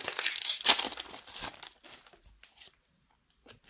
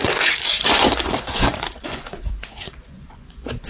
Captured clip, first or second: first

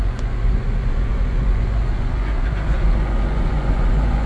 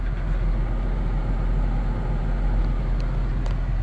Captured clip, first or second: second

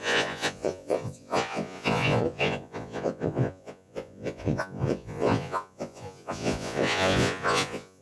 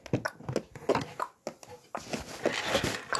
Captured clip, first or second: second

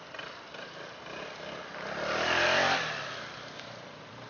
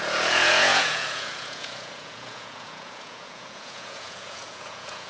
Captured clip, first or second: first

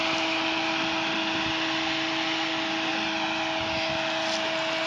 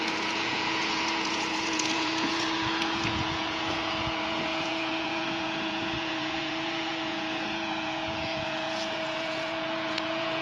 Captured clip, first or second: first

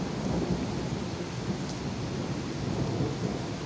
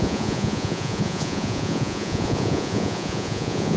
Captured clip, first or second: first